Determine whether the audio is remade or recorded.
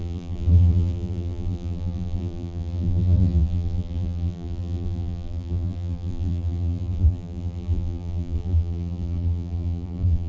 remade